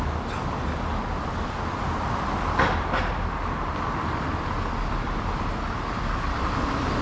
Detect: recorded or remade recorded